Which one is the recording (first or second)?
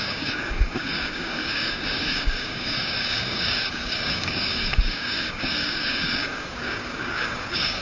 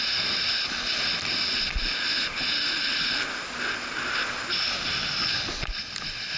second